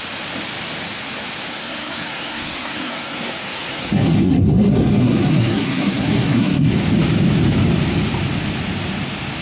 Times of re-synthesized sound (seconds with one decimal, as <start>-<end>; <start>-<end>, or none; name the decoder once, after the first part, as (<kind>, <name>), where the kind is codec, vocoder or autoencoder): 1.5-6.7 (codec, SNAC)